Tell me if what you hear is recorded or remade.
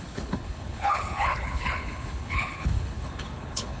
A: remade